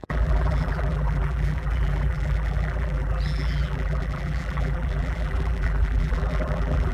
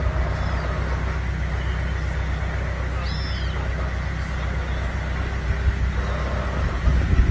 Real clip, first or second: second